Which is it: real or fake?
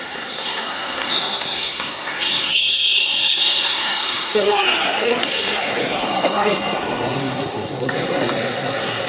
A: fake